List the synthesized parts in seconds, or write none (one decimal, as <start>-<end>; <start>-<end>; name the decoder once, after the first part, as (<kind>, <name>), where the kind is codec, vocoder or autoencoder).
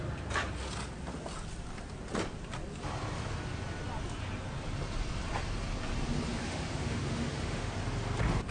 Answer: 6.3-7.7 (autoencoder, DAC-VAE)